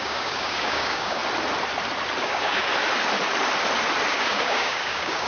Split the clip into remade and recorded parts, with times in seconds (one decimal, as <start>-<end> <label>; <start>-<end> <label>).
0.0-1.2 remade; 1.2-2.2 recorded; 2.2-2.7 remade; 2.7-4.1 recorded; 4.1-5.3 remade